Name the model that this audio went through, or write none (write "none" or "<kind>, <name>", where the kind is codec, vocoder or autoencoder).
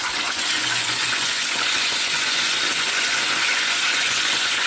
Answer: vocoder, Vocos